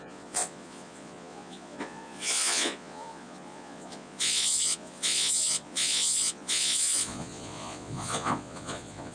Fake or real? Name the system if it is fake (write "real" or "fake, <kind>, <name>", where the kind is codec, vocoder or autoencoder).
fake, vocoder, Vocos